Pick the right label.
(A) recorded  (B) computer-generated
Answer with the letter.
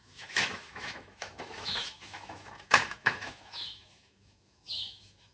B